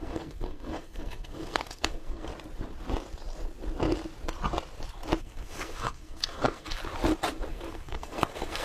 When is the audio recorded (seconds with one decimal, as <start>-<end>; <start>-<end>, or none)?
2.3-5.2; 6.8-7.5